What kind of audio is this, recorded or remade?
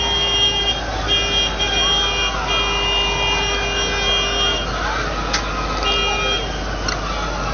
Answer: recorded